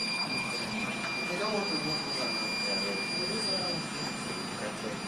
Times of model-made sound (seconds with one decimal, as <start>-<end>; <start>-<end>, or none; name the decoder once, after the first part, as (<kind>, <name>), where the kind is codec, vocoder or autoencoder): 0.0-0.9 (codec, HILCodec)